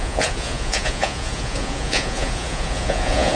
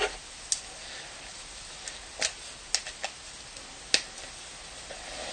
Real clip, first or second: second